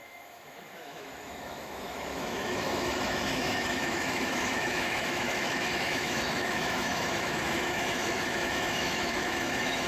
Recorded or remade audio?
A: remade